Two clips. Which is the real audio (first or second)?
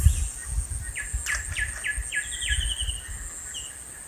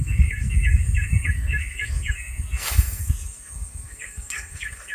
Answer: first